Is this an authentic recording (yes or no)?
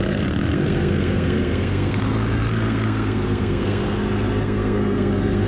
no